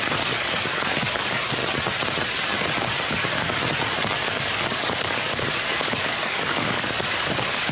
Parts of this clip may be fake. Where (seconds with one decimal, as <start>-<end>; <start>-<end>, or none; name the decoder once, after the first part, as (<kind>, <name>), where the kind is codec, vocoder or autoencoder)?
0.0-1.6 (codec, DAC); 3.1-3.6; 4.3-7.7